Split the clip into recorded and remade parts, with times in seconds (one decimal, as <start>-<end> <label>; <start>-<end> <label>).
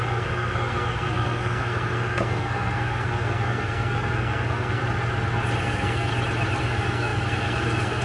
0.0-4.8 remade; 4.8-5.6 recorded; 5.6-6.1 remade; 6.1-6.6 recorded; 6.6-8.0 remade